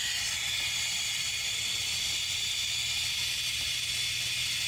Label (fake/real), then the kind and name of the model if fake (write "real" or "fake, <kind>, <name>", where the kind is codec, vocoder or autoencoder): real